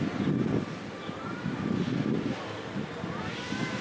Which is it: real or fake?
real